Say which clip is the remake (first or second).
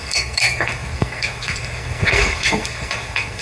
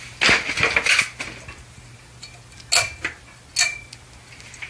first